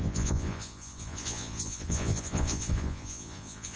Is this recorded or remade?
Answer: remade